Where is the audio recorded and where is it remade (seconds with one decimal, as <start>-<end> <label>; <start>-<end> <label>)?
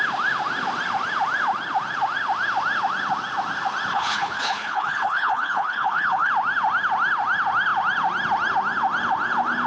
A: 0.0-3.9 recorded; 3.9-6.3 remade; 6.3-9.7 recorded